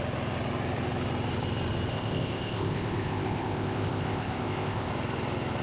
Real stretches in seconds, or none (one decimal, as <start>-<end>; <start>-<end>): 0.0-1.9; 4.9-5.6